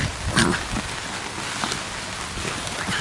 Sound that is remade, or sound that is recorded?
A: recorded